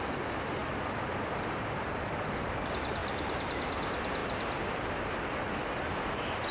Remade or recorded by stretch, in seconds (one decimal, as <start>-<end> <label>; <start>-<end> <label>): 0.0-6.5 recorded